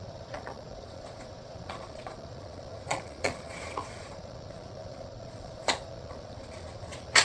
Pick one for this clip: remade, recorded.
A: remade